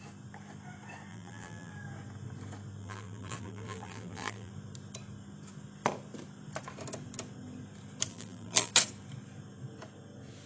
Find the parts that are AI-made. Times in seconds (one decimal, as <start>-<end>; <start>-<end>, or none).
1.1-1.7; 2.8-4.5; 8.1-8.7